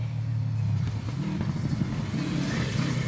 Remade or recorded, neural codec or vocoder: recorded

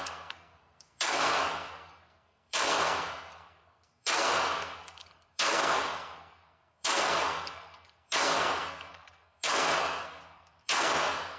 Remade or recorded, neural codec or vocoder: remade, codec, SNAC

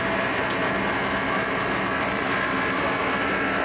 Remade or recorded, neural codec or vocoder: recorded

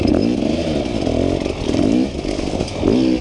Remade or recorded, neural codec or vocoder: recorded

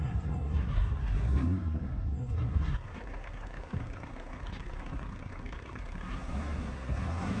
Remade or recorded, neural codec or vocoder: remade, codec, SNAC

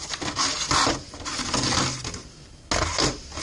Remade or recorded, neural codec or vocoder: recorded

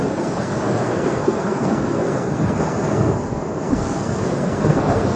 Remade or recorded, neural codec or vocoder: remade, codec, SNAC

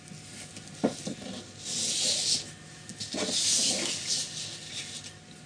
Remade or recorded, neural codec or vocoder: recorded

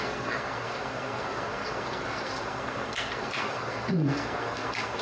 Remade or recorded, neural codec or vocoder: remade, codec, SNAC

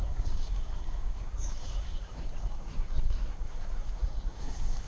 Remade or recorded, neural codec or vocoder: remade, codec, SNAC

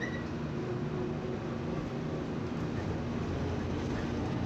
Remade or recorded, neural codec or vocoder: recorded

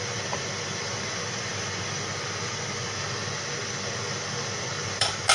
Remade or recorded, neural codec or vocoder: recorded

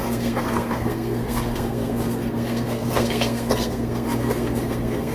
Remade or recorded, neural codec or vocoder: remade, codec, SNAC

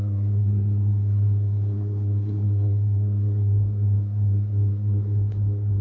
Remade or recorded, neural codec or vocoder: remade, codec, SNAC